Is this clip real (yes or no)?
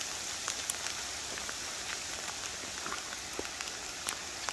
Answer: yes